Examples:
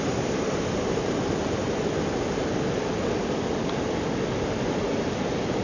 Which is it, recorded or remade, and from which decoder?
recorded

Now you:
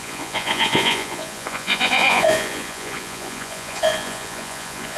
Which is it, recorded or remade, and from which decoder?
remade, vocoder, Vocos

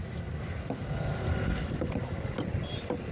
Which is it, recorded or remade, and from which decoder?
recorded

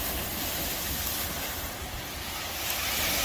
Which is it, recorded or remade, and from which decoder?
recorded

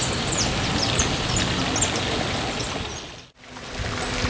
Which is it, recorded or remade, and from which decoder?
recorded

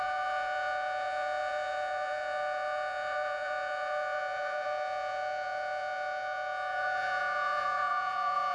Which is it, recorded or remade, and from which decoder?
remade, vocoder, Vocos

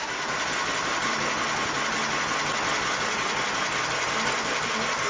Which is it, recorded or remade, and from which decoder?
recorded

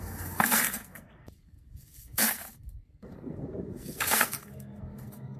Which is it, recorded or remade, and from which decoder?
remade, codec, SNAC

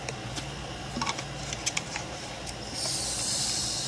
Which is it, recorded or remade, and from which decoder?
recorded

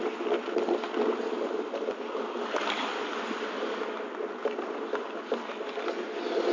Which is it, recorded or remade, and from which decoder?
recorded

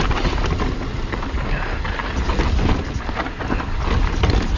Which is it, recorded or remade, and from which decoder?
recorded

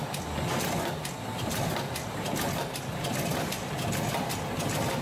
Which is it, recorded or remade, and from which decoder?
recorded